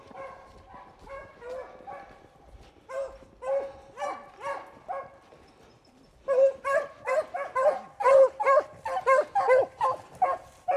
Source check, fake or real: real